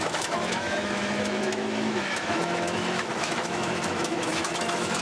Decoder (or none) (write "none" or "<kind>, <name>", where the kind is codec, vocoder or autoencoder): autoencoder, DAC-VAE